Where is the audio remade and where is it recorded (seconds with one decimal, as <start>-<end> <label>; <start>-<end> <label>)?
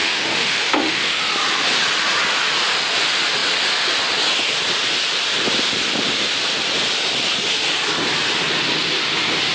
0.0-1.2 remade; 1.2-9.5 recorded